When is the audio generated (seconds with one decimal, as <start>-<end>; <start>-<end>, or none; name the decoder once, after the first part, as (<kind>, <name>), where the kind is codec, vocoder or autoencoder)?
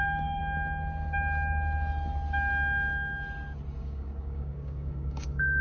0.0-0.4 (codec, DAC); 3.8-5.6